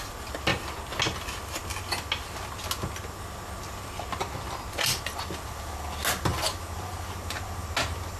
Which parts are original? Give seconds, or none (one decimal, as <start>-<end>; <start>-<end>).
0.0-8.2